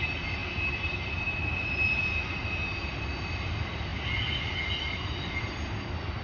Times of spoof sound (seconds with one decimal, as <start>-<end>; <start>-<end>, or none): none